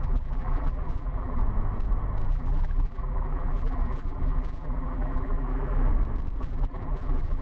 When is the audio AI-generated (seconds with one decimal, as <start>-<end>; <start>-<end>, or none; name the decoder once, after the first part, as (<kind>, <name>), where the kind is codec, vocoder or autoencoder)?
0.0-1.4 (vocoder, BigVGAN v2); 2.3-5.9; 6.4-7.4